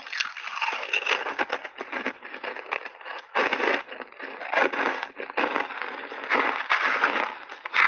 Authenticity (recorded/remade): recorded